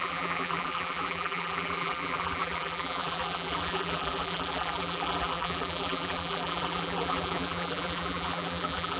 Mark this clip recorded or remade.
remade